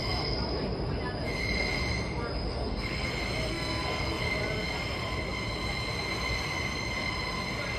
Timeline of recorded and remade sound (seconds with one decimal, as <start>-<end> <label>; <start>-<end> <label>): 0.0-2.5 recorded; 2.5-3.1 remade; 3.1-3.5 recorded; 3.5-4.2 remade; 4.2-7.8 recorded